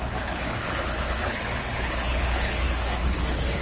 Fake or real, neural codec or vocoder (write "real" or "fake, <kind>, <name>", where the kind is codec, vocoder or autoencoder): fake, codec, HILCodec